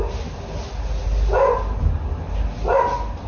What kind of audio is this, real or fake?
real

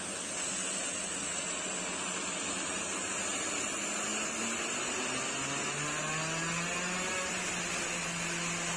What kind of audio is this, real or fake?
real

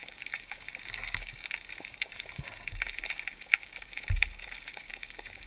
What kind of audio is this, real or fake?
fake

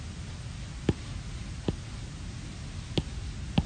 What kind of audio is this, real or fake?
real